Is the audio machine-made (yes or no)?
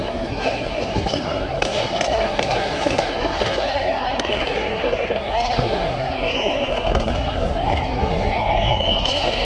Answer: yes